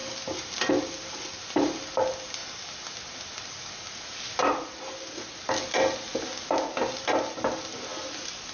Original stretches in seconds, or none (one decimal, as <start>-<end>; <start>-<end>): 0.0-8.5